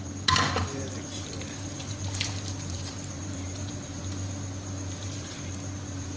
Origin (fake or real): fake